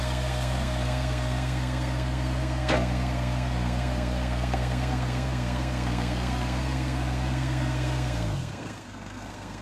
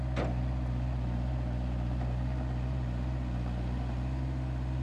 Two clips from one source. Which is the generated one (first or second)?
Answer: first